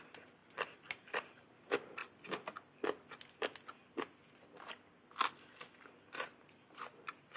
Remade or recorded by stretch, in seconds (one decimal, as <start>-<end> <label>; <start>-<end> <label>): 0.0-2.0 remade; 2.0-6.4 recorded; 6.4-7.4 remade